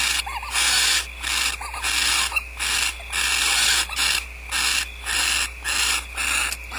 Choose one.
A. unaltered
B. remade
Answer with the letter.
A